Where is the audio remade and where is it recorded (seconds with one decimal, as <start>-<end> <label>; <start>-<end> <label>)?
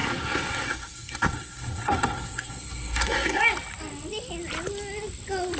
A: 0.0-3.4 remade; 3.4-5.6 recorded